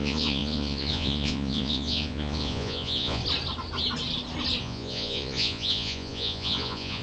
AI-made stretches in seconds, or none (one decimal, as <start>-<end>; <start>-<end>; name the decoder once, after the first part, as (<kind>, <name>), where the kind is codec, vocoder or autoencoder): 0.0-3.2 (vocoder, Vocos); 4.6-7.0